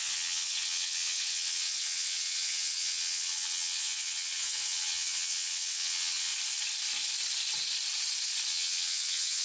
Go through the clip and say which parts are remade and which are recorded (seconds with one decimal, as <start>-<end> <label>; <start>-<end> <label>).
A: 0.0-6.3 remade; 6.3-8.5 recorded; 8.5-9.4 remade